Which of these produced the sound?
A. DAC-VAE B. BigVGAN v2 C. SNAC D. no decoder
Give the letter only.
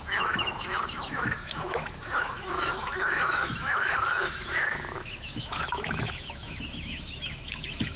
A